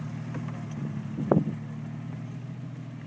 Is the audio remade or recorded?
recorded